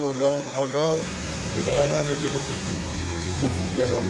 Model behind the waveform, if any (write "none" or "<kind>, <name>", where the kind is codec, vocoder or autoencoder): codec, SNAC